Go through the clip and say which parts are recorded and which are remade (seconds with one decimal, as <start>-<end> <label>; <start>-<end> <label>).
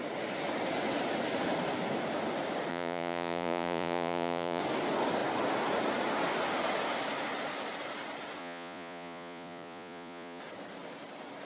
0.0-2.7 recorded; 2.7-4.6 remade; 4.6-8.4 recorded; 8.4-10.4 remade; 10.4-11.5 recorded